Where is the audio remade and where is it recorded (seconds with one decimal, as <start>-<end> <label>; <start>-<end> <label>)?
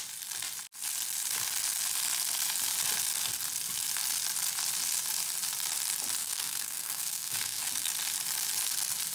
0.0-6.2 recorded; 6.2-7.7 remade; 7.7-9.1 recorded